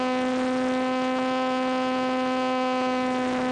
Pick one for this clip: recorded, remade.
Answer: recorded